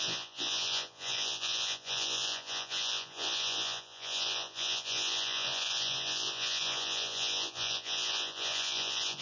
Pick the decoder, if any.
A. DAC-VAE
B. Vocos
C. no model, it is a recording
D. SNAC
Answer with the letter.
B